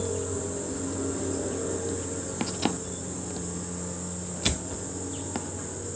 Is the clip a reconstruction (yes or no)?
no